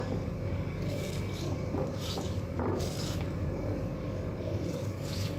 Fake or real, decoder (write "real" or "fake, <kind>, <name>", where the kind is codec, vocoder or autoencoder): fake, codec, DAC